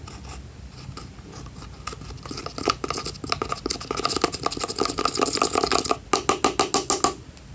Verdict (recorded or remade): recorded